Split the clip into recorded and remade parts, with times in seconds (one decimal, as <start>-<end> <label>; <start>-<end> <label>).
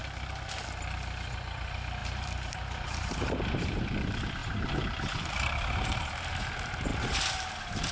0.0-2.0 recorded; 2.0-3.8 remade; 3.8-4.4 recorded; 4.4-6.5 remade; 6.5-6.9 recorded; 6.9-7.9 remade